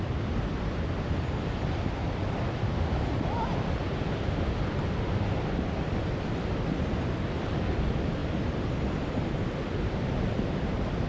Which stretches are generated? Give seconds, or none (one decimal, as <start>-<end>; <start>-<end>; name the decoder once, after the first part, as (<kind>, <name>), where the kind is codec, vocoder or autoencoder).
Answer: none